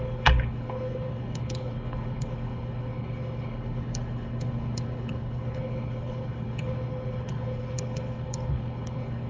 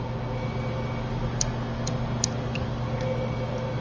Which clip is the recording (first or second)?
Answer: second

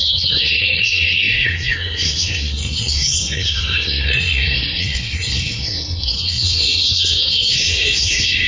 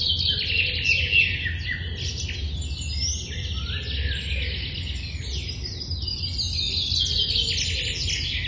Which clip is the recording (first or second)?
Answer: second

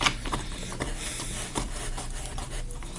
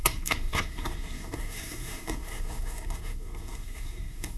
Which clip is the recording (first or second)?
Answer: first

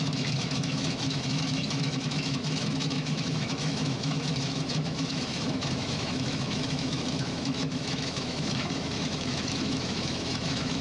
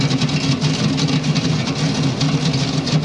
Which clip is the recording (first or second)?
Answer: second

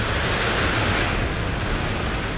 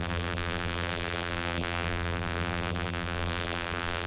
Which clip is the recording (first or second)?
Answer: first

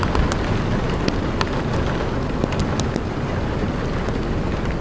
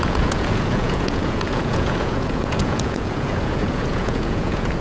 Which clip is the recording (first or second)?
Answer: first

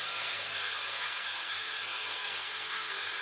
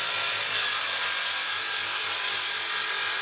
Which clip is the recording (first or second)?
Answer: second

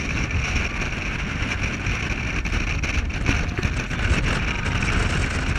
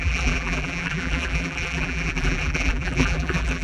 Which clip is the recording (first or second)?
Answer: first